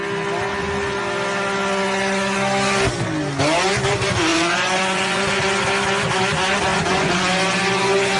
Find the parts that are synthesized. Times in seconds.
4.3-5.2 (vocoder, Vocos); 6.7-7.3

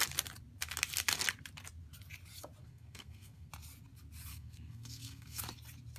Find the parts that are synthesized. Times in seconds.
2.6-3.5 (codec, SNAC); 4.3-5.4

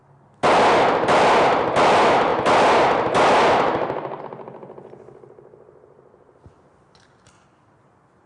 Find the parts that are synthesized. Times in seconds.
none

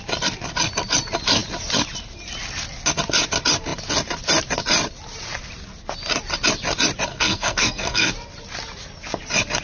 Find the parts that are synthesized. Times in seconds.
7.1-8.1 (codec, SNAC)

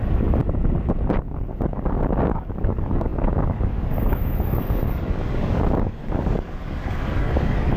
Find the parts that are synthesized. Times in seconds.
0.0-0.4 (codec, DAC); 1.2-7.8

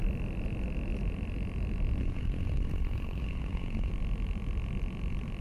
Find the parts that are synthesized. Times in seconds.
2.0-3.9 (codec, SNAC)

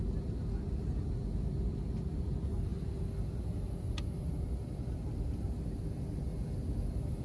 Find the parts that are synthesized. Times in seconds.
none

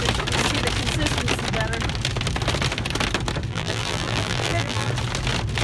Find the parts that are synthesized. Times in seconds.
3.5-4.9 (vocoder, BigVGAN v2)